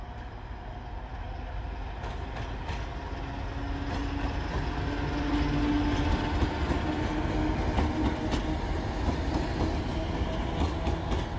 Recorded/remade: recorded